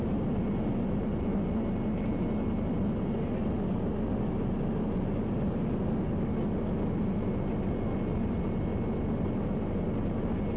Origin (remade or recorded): recorded